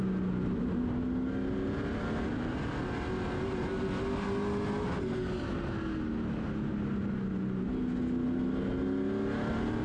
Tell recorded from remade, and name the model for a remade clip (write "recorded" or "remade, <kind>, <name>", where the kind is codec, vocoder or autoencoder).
recorded